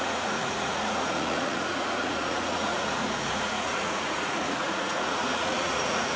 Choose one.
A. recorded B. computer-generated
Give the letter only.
B